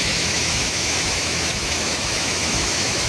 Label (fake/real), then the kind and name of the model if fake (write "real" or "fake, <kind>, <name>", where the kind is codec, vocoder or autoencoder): fake, autoencoder, DAC-VAE